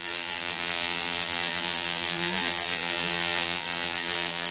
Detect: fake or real fake